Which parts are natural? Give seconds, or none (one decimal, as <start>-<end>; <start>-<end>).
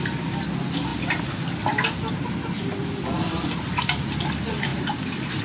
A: 0.0-5.4